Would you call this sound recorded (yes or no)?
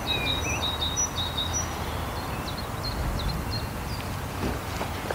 yes